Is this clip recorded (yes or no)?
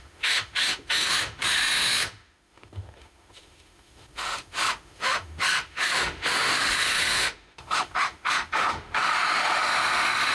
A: no